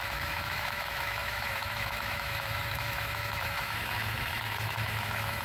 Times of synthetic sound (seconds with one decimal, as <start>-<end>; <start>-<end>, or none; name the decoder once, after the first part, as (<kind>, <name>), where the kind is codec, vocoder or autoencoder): 0.0-5.4 (autoencoder, DAC-VAE)